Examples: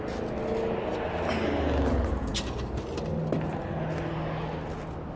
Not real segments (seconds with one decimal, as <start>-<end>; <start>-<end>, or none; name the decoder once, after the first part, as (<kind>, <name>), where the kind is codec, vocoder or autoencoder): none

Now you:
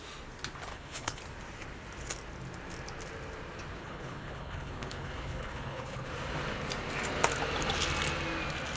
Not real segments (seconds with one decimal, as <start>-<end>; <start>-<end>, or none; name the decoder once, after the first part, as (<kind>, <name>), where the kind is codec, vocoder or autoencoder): 0.7-1.2 (codec, HILCodec); 3.8-6.1

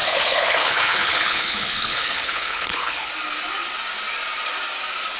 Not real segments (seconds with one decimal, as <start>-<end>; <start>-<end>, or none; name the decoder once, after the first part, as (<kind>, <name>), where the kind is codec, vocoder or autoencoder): 0.0-3.1 (codec, HILCodec)

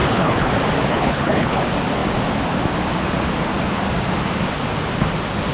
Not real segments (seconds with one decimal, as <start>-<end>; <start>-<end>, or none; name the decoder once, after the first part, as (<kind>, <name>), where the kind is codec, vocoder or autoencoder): 0.0-0.5 (codec, HILCodec); 0.9-1.6